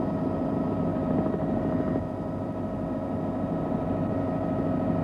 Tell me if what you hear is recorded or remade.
recorded